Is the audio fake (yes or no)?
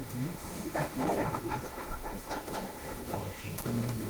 yes